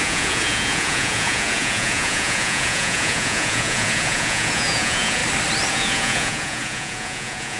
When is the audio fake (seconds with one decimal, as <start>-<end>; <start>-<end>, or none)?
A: 0.0-5.2; 5.7-7.6